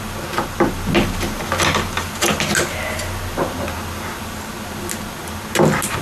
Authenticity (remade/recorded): recorded